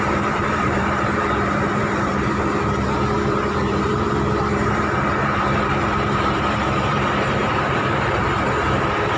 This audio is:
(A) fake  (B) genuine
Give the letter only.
A